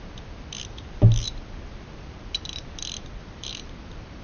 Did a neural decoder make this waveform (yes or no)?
no